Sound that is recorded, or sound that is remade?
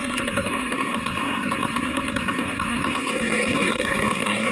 remade